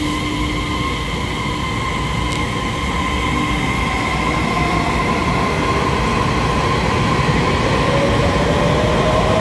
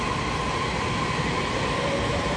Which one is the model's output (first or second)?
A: second